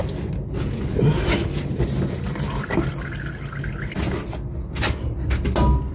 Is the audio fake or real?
real